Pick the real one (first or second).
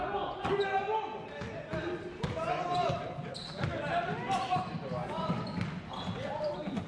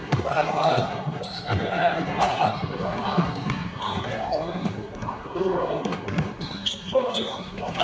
first